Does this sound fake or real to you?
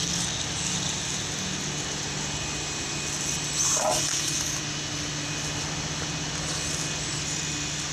real